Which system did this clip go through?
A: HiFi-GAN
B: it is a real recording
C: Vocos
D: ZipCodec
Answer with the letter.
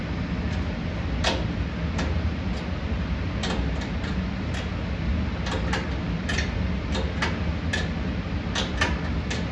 B